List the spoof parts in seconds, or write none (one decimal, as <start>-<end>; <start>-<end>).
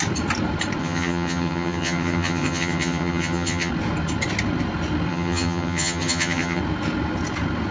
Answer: 0.8-3.7; 5.1-6.6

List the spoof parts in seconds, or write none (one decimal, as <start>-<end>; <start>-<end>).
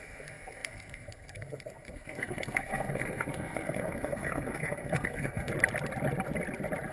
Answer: 0.0-5.5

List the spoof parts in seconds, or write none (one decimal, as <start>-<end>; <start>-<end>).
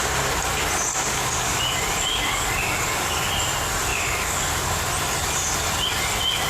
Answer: 0.9-1.7; 2.1-3.2; 3.9-4.8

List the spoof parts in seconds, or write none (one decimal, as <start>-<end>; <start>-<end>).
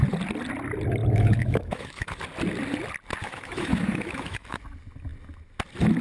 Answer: 1.0-2.2; 3.2-4.6